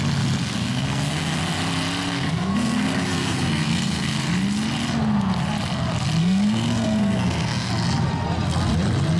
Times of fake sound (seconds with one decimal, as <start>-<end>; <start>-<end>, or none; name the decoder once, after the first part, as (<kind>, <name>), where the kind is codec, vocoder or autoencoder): 0.4-1.4 (codec, SNAC); 2.1-4.3; 6.2-7.7